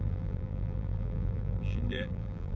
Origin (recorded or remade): remade